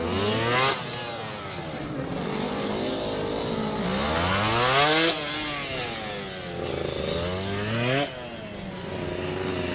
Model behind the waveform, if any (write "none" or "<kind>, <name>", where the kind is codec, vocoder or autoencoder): none